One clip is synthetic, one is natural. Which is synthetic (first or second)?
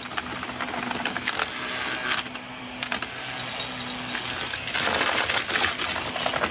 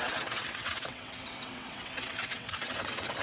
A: second